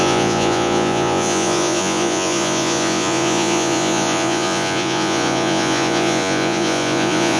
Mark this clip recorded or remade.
remade